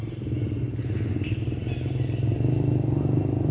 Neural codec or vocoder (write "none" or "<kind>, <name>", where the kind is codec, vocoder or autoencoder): none